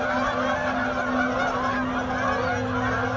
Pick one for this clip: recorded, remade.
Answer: recorded